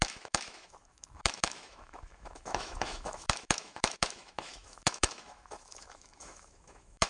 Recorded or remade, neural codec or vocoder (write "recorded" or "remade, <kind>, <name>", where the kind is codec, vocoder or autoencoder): remade, autoencoder, DAC-VAE